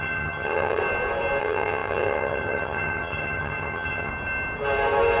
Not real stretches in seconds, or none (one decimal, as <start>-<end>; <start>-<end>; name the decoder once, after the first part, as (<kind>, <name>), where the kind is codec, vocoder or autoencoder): 0.0-0.8 (vocoder, HiFi-GAN); 1.4-4.1